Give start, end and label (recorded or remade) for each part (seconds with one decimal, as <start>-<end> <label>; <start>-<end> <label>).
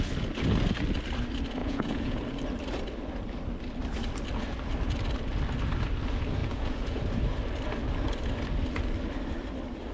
0.0-1.6 recorded; 1.6-2.2 remade; 2.2-6.4 recorded; 6.4-7.0 remade; 7.0-9.9 recorded